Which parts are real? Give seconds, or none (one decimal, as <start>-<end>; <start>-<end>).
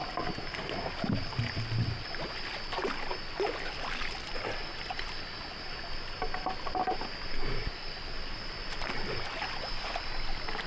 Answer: 0.0-10.7